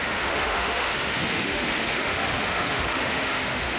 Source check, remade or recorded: remade